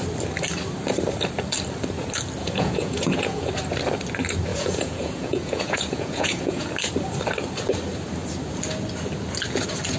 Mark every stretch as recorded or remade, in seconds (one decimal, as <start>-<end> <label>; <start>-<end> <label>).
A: 0.0-2.4 recorded; 2.4-3.5 remade; 3.5-4.5 recorded; 4.5-6.7 remade; 6.7-10.0 recorded